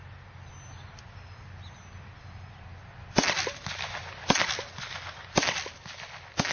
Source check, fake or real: real